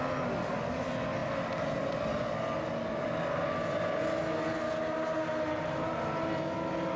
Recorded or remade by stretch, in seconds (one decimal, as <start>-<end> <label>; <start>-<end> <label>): 0.0-7.0 recorded